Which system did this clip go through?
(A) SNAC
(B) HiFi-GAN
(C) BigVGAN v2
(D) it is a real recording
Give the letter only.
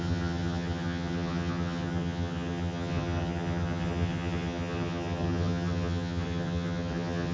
B